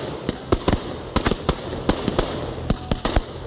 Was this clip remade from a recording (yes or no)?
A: no